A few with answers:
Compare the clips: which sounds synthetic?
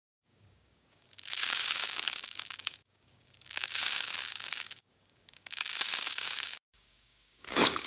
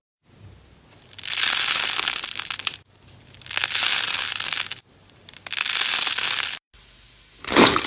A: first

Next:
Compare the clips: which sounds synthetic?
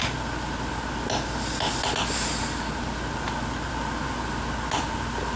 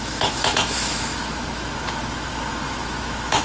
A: second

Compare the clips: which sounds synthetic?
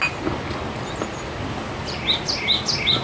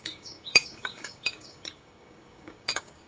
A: second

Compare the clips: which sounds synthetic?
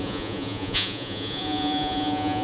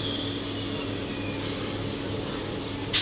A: first